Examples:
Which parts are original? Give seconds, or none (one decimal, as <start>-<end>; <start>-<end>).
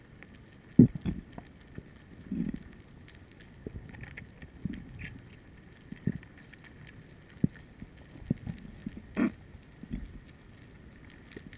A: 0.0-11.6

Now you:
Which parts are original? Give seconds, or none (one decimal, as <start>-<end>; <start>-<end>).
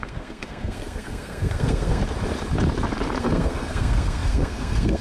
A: 2.0-3.2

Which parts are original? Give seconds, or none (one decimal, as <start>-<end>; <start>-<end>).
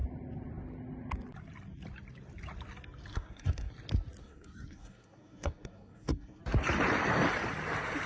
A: 0.0-3.1; 3.7-4.2; 6.4-8.1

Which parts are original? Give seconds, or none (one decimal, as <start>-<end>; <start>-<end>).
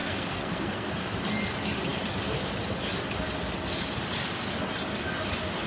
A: 0.9-5.7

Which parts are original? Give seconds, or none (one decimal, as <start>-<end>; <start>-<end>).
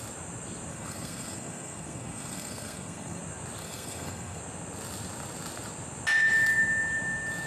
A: 0.0-0.7; 3.2-3.6; 4.4-7.5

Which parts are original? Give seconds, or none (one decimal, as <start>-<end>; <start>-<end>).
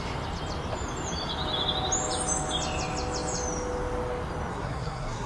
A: 0.0-4.5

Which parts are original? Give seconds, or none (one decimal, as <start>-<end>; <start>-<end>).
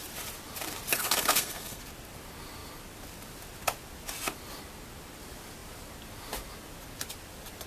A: 0.0-0.9; 1.8-7.7